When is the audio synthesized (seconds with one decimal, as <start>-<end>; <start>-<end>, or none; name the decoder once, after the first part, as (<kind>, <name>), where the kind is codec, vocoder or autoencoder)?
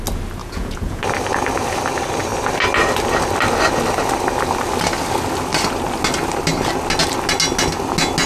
0.4-1.0 (vocoder, Vocos)